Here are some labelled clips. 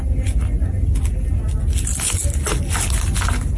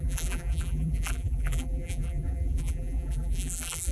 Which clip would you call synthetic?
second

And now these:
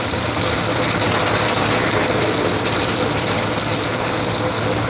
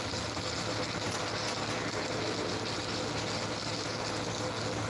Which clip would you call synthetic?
first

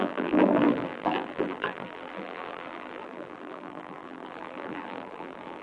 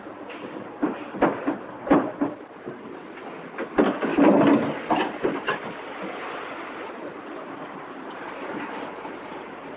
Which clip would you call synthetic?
first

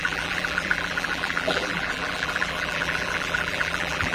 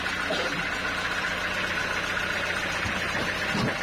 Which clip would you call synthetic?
first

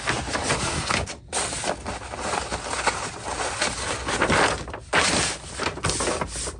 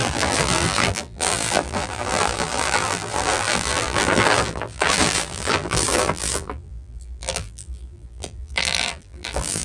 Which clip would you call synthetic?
second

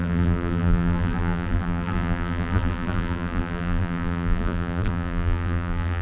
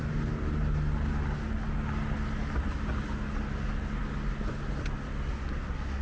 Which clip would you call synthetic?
first